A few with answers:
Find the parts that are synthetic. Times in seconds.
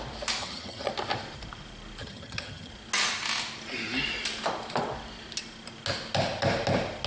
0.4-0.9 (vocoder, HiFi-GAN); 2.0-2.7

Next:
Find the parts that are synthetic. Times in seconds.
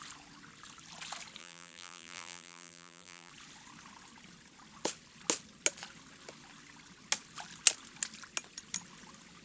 1.4-3.3 (vocoder, BigVGAN v2)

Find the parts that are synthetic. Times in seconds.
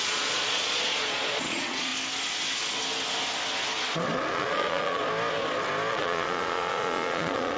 0.0-1.9 (vocoder, Vocos); 4.3-5.0; 5.9-7.6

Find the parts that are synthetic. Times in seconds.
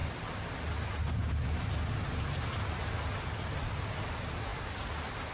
none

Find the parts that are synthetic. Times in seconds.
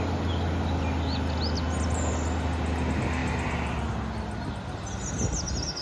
none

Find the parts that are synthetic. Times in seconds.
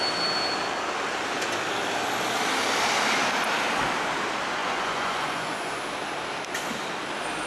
4.6-5.8 (vocoder, Vocos)